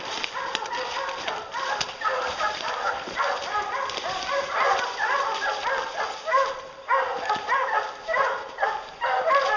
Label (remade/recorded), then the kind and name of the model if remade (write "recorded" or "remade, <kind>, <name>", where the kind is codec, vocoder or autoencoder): recorded